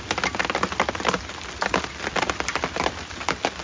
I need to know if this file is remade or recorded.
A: recorded